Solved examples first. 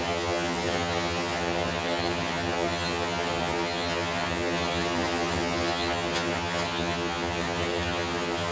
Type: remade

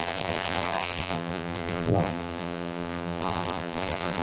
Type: remade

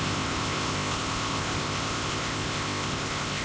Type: remade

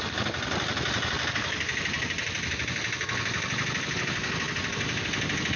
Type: recorded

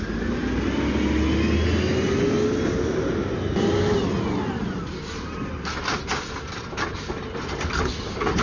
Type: recorded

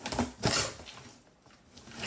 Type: recorded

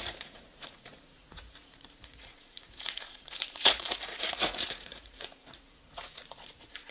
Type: remade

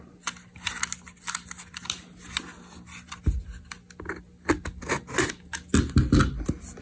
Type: recorded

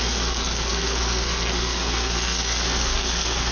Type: remade